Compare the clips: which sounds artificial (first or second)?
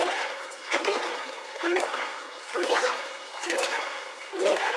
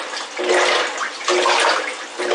first